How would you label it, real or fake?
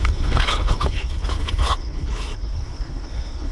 fake